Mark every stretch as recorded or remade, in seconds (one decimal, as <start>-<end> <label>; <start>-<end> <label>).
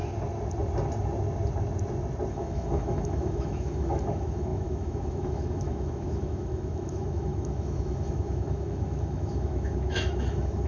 0.0-2.3 recorded; 2.3-10.7 remade